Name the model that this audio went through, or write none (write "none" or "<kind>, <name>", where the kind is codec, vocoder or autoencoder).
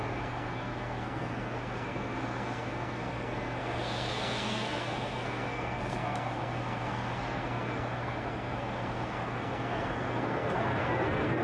codec, SNAC